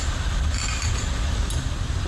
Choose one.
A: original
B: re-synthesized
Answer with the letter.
A